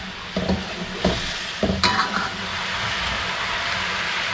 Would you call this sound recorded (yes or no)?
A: yes